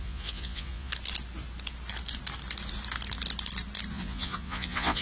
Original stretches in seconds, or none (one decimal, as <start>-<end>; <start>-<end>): 0.9-3.9